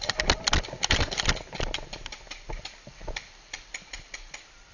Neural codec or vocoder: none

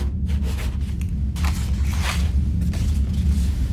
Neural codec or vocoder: none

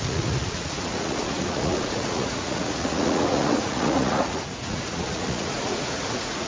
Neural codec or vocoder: vocoder, Vocos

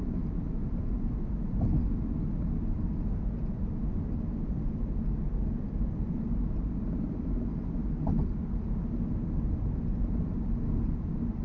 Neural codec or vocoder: none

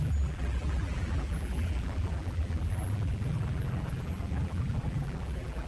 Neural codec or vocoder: vocoder, BigVGAN v2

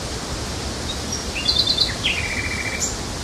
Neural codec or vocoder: none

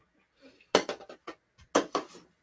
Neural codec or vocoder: none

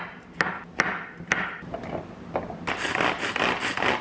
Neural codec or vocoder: none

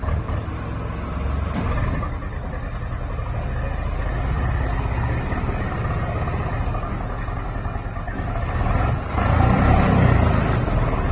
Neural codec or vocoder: none